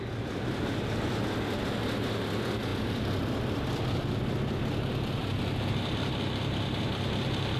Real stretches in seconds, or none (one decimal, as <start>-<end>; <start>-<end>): 0.0-7.6